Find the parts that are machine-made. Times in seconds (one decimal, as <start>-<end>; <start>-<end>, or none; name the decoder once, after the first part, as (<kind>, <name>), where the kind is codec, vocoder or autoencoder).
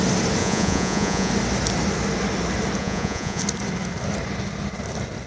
0.4-1.3 (vocoder, Vocos); 2.8-3.4